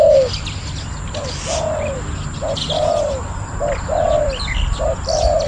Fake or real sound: real